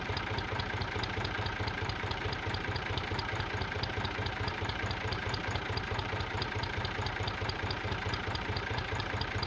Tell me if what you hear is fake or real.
fake